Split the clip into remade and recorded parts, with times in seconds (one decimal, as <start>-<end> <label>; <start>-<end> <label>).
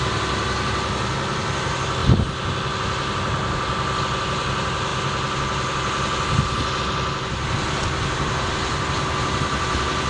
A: 0.0-10.1 recorded